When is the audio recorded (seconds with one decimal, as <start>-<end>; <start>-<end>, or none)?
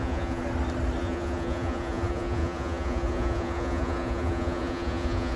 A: 0.4-1.0